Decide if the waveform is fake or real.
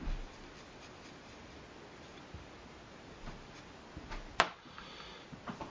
real